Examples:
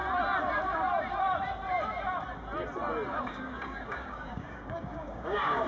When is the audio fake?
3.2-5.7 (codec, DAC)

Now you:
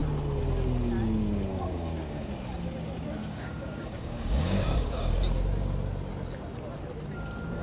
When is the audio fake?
1.5-2.3 (codec, DAC); 3.2-5.1